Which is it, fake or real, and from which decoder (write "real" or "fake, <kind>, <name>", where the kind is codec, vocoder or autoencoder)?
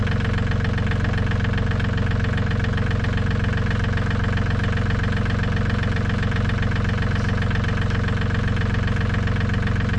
real